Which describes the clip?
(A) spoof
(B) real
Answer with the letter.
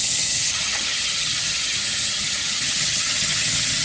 A